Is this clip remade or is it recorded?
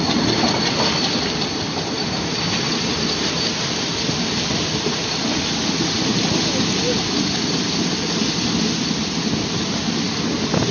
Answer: recorded